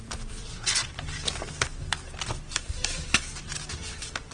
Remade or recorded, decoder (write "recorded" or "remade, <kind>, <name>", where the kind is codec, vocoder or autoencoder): remade, vocoder, BigVGAN v2